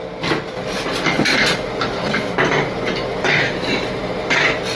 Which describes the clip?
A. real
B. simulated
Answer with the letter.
A